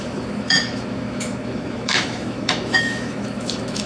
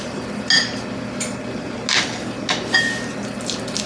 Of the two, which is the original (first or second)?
second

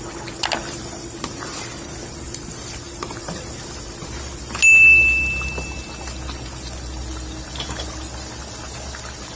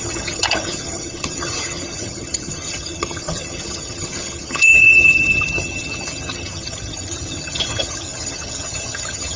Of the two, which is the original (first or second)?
first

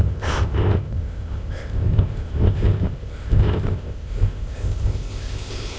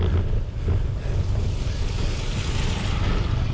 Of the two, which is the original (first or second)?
second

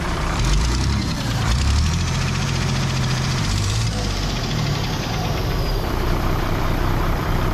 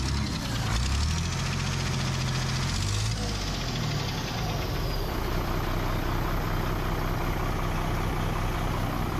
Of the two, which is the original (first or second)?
second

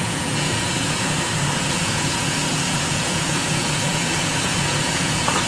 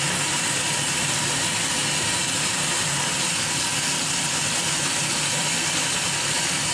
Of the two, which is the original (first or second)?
second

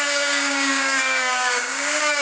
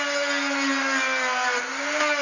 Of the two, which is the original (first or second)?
second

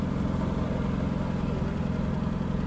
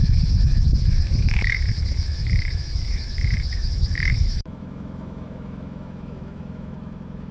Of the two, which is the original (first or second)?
first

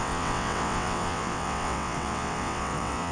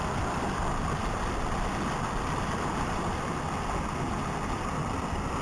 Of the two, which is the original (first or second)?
second